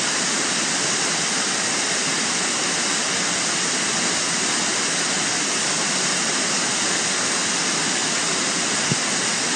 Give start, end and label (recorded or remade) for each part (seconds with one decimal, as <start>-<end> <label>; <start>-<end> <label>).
0.0-8.0 recorded; 8.0-8.6 remade; 8.6-9.6 recorded